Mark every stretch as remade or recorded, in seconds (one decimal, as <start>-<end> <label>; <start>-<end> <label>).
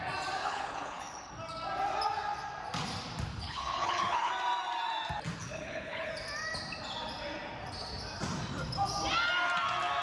0.0-0.4 recorded; 0.4-1.3 remade; 1.3-3.3 recorded; 3.3-4.3 remade; 4.3-5.4 recorded; 5.4-6.1 remade; 6.1-10.0 recorded